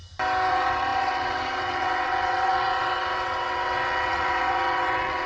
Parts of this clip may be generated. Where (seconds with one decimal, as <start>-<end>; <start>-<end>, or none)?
0.5-5.3